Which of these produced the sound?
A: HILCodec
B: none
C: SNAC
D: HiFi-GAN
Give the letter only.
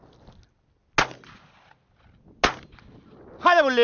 B